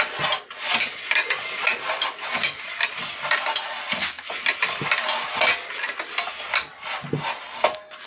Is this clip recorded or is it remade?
recorded